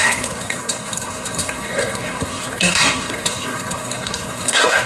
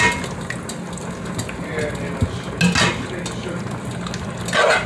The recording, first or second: second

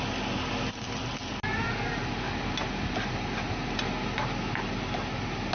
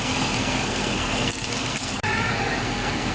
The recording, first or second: first